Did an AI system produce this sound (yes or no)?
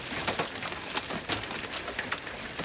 no